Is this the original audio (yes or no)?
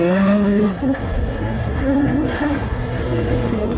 no